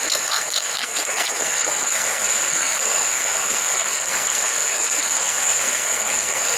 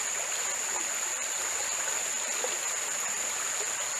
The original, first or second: second